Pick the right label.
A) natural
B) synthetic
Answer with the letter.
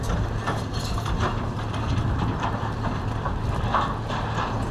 A